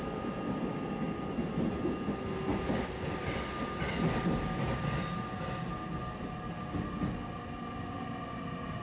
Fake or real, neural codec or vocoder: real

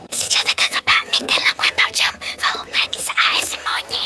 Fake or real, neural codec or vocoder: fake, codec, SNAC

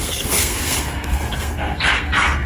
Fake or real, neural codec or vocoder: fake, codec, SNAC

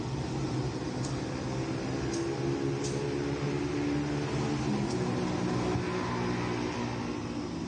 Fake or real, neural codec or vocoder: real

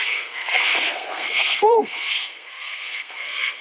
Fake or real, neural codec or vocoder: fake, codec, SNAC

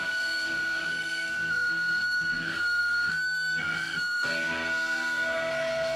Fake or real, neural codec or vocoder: fake, codec, SNAC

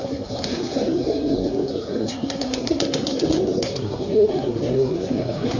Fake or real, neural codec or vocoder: fake, codec, SNAC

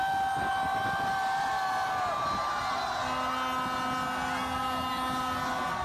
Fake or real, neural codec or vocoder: real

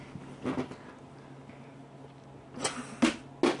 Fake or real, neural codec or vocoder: real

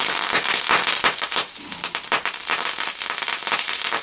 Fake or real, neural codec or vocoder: real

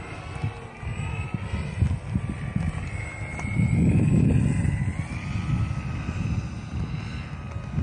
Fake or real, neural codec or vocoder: real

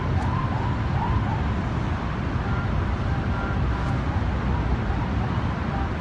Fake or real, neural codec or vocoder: real